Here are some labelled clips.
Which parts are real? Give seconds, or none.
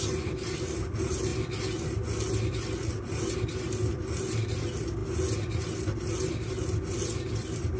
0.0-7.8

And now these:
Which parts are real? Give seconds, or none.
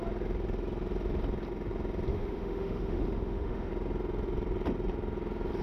0.0-2.1; 3.7-5.6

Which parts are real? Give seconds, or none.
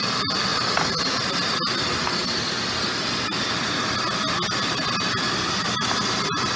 0.0-6.6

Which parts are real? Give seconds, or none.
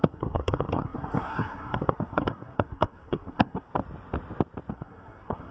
3.7-4.7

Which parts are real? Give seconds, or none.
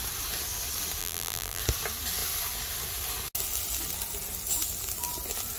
0.0-1.0; 1.6-5.6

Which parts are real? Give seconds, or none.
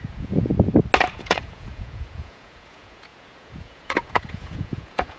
0.5-1.1